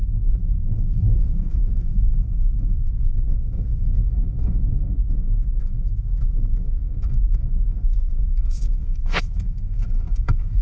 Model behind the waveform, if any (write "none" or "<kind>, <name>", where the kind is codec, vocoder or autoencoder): codec, SNAC